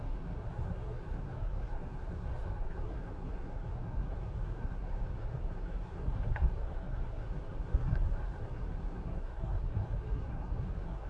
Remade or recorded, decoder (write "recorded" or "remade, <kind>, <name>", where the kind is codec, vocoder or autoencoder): remade, codec, SNAC